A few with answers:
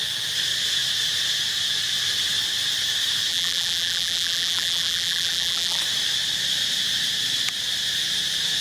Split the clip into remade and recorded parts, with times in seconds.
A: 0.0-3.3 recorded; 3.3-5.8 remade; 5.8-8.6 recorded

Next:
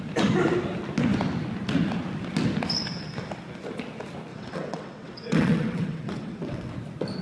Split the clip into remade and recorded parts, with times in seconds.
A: 0.0-4.3 recorded; 4.3-6.7 remade; 6.7-7.2 recorded

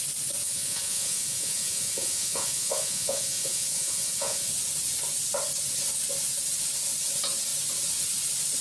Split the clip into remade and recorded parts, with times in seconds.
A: 0.0-0.4 recorded; 0.4-4.5 remade; 4.5-8.6 recorded